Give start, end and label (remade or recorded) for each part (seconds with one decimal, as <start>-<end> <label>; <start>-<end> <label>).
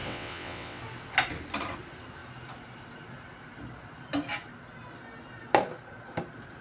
0.0-0.8 remade; 0.8-6.6 recorded